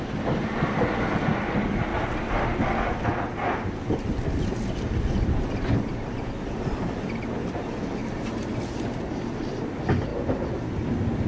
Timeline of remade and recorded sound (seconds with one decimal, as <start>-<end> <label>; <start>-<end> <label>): 0.0-1.9 recorded; 1.9-2.7 remade; 2.7-8.0 recorded; 8.0-9.7 remade; 9.7-11.3 recorded